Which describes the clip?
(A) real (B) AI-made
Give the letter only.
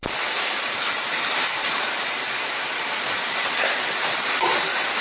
B